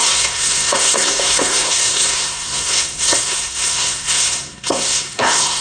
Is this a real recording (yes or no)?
no